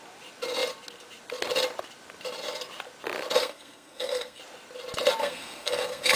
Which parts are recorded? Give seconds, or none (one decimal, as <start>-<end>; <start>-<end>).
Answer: 0.0-3.4; 4.4-5.2